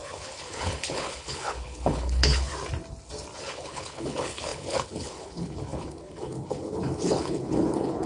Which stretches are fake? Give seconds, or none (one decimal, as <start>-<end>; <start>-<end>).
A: 0.0-2.5; 3.4-8.1